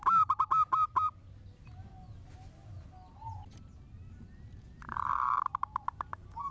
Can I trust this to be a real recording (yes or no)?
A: yes